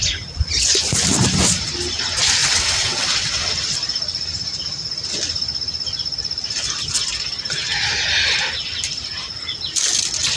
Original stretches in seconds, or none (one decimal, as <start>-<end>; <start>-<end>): 0.0-2.4; 3.5-10.4